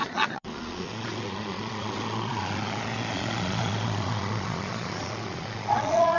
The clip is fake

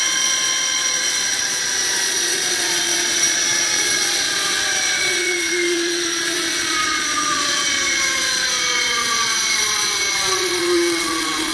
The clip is fake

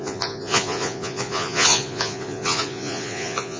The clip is fake